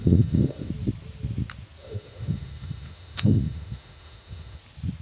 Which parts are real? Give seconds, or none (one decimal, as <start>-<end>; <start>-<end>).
0.7-1.8; 4.6-5.0